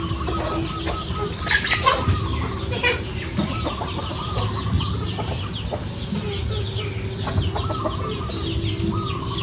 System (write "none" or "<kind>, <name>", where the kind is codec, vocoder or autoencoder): none